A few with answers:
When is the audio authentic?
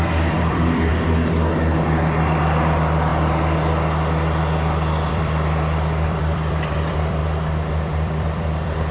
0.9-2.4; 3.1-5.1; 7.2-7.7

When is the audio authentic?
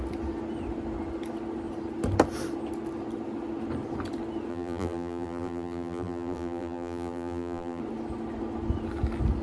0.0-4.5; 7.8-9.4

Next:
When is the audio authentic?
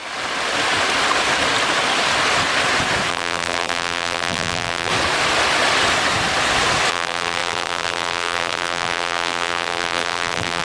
0.0-3.1; 4.9-6.9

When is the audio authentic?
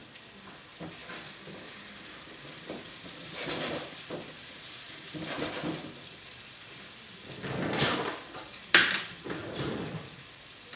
1.0-2.0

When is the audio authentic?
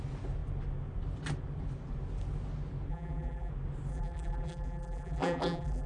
0.0-2.9; 3.5-3.9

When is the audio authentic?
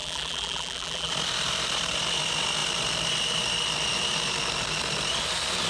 1.1-5.7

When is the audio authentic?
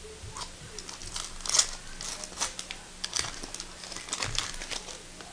0.0-5.3